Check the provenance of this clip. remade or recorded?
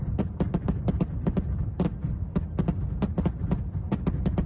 recorded